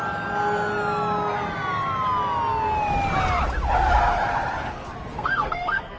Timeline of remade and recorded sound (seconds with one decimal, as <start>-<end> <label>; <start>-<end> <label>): 0.0-5.1 recorded; 5.1-6.0 remade